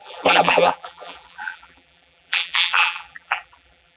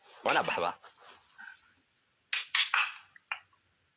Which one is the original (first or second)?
second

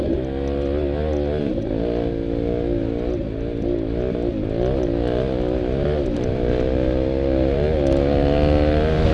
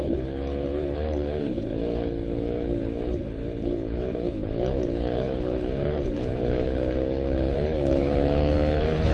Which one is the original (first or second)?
first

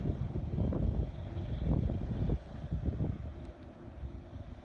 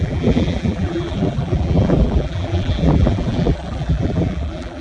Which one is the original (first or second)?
first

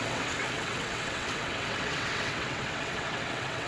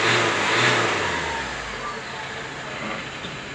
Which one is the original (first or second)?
second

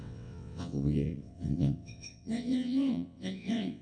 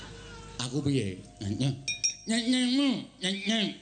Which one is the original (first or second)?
second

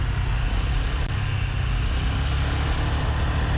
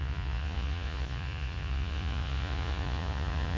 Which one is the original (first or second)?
first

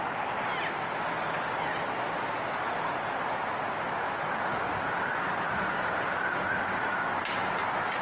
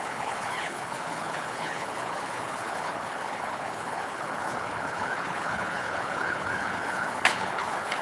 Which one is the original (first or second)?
first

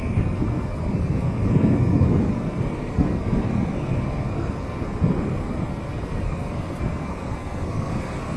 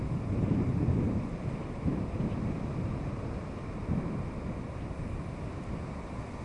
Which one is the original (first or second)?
second